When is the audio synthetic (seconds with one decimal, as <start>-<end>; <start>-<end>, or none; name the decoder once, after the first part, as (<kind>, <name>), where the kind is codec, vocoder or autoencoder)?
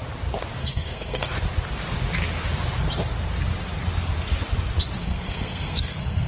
0.6-1.2 (codec, SNAC); 5.0-6.3